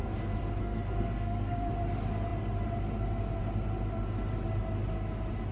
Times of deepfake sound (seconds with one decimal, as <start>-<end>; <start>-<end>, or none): 0.6-1.7